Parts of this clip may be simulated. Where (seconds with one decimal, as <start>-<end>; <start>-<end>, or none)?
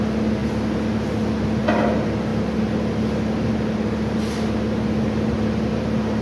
none